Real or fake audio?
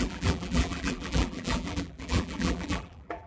fake